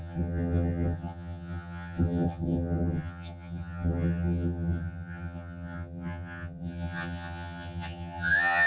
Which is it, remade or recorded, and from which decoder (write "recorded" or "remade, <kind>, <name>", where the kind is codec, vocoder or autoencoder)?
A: remade, vocoder, HiFi-GAN